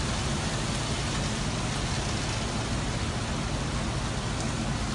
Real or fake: real